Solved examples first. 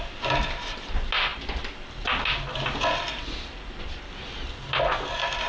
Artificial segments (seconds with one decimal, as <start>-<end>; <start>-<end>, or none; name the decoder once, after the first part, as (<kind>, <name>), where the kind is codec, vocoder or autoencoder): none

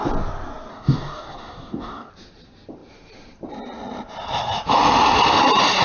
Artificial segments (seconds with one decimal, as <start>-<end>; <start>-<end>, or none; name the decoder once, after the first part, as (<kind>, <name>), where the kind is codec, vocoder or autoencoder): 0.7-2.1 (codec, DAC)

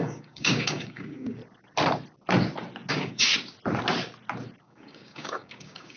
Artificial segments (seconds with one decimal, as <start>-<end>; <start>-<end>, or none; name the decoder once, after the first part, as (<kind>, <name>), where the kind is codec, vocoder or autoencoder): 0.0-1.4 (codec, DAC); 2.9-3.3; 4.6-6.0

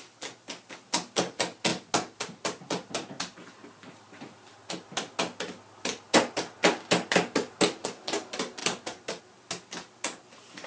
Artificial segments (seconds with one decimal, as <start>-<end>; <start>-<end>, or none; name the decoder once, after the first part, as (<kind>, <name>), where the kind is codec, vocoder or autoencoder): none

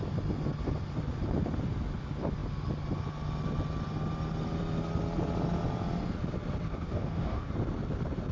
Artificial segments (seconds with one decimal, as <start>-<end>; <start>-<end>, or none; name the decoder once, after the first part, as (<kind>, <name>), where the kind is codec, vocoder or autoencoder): 6.7-7.5 (codec, DAC)

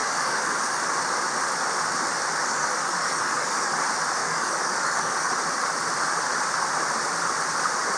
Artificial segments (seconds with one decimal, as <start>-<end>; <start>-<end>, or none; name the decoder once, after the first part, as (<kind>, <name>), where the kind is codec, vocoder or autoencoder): 0.0-0.9 (codec, DAC); 2.5-3.8; 4.2-5.3

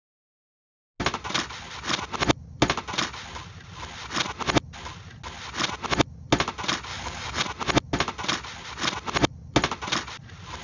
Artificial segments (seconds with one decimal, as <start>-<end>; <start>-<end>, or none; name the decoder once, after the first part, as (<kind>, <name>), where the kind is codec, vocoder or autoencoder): 6.9-7.4 (codec, DAC)